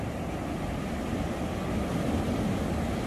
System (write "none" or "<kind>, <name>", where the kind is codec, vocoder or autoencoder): none